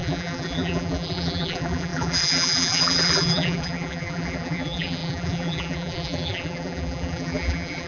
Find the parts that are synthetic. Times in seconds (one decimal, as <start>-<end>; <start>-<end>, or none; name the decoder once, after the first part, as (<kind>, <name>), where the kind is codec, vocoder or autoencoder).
0.0-7.9 (vocoder, BigVGAN v2)